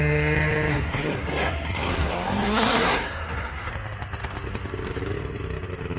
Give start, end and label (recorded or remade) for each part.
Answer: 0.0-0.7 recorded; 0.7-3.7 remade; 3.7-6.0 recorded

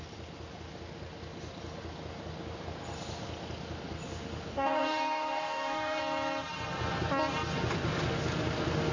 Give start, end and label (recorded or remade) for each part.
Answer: 0.0-4.5 recorded; 4.5-6.0 remade; 6.0-8.9 recorded

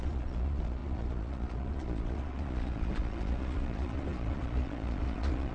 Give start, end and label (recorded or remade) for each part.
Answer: 0.0-5.5 remade